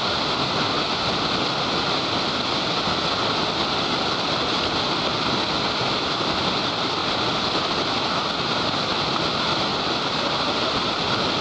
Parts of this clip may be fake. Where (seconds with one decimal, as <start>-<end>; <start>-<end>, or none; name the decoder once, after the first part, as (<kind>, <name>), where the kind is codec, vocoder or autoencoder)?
none